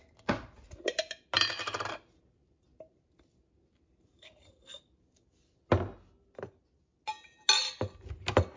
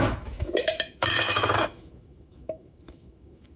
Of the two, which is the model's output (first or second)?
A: second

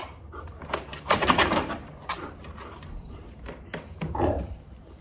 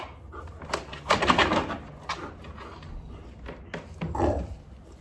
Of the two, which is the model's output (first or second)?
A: first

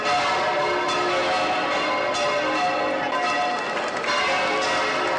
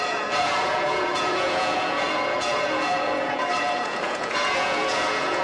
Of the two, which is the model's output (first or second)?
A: second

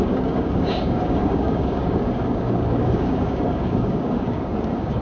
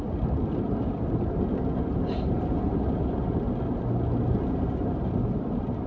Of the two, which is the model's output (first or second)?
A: first